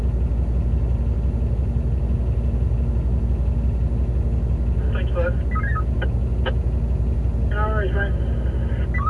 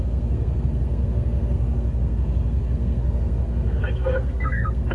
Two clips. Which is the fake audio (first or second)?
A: second